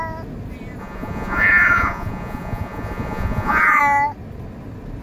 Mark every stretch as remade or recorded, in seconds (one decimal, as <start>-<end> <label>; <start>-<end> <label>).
0.0-0.8 recorded; 0.8-3.8 remade; 3.8-5.0 recorded